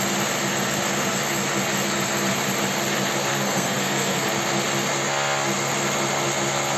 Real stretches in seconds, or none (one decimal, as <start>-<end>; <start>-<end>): 0.0-3.3; 4.3-6.8